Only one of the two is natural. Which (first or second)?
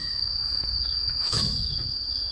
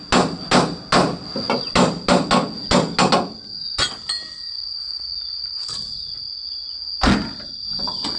second